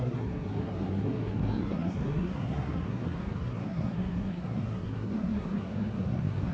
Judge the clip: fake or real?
fake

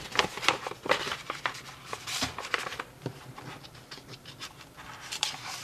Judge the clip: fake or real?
fake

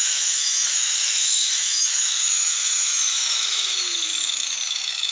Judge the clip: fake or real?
fake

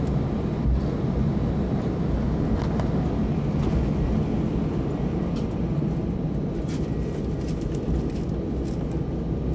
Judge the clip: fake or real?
real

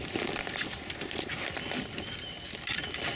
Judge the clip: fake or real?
real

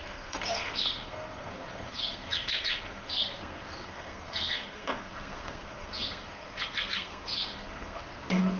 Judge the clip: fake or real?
fake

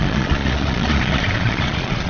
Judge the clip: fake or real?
fake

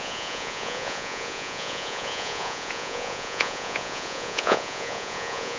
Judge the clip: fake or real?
fake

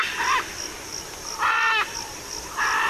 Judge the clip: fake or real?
real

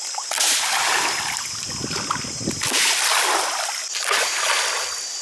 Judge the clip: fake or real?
real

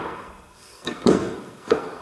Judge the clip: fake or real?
fake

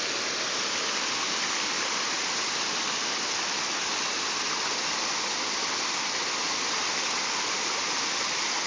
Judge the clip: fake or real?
real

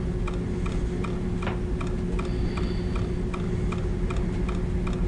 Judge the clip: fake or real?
real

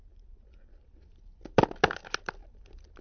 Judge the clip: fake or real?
real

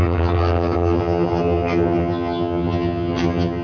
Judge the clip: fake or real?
fake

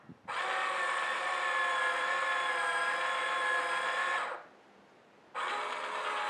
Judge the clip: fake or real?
real